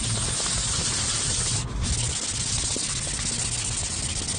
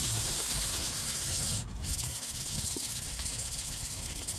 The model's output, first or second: second